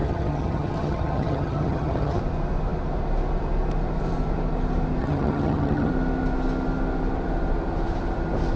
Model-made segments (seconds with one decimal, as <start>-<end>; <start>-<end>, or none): 0.0-2.2; 5.0-5.9